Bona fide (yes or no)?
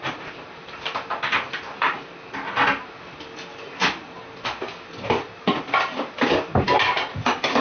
yes